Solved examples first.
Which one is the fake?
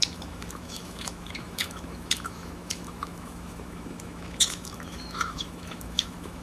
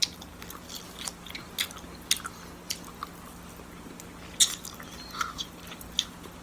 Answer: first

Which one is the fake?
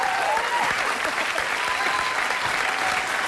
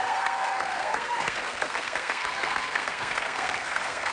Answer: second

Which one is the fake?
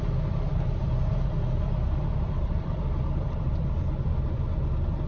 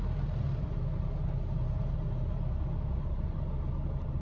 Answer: first